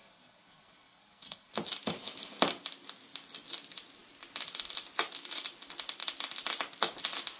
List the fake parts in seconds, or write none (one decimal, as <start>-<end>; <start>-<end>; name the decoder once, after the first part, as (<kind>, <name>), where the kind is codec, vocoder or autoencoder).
0.0-1.5 (codec, SNAC)